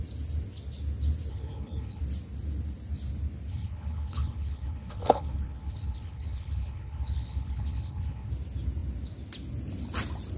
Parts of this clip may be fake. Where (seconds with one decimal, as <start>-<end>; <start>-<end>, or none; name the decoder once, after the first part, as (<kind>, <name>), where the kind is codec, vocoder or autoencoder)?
1.3-2.0 (codec, HILCodec); 3.5-8.3